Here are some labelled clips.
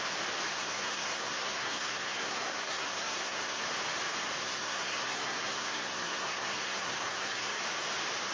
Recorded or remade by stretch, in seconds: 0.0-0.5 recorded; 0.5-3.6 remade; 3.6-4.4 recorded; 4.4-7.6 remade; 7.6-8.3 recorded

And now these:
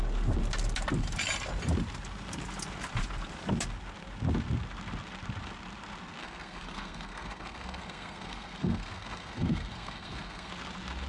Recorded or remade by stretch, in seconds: 0.0-6.2 recorded; 6.2-10.5 remade; 10.5-11.1 recorded

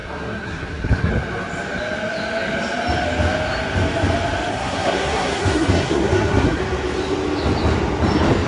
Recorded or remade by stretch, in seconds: 0.0-1.1 remade; 1.1-4.5 recorded; 4.5-6.6 remade; 6.6-8.5 recorded

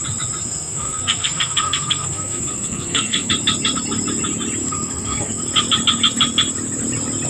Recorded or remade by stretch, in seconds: 0.0-0.4 recorded; 0.4-3.3 remade; 3.3-4.6 recorded; 4.6-5.4 remade; 5.4-7.3 recorded

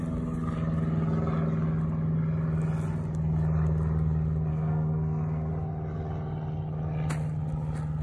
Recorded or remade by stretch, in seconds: 0.0-4.5 recorded; 4.5-5.5 remade; 5.5-8.0 recorded

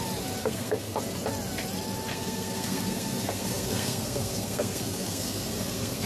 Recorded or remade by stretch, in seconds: 0.0-0.4 recorded; 0.4-1.0 remade; 1.0-2.1 recorded; 2.1-6.1 remade